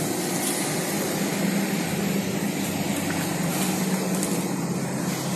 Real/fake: real